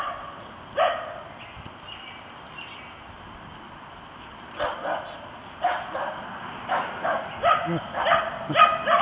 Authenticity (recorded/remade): recorded